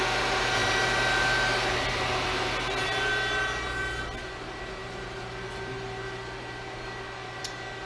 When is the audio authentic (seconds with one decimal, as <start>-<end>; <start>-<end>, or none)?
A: 0.0-7.9